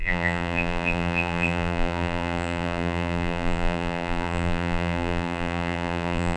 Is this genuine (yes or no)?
no